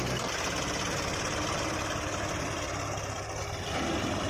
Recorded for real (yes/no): yes